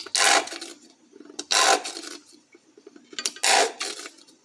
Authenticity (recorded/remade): recorded